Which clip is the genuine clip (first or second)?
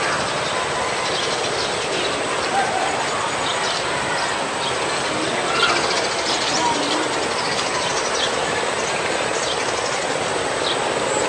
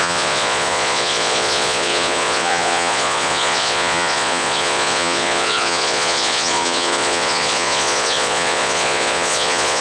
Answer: first